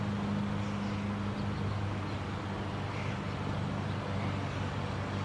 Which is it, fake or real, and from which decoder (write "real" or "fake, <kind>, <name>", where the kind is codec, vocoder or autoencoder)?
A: real